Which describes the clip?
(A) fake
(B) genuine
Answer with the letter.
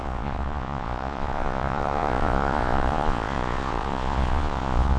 A